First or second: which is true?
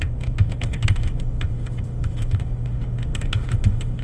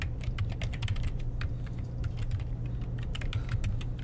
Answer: second